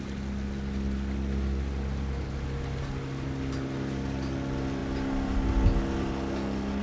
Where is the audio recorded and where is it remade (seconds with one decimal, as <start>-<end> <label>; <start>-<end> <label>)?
0.0-6.8 recorded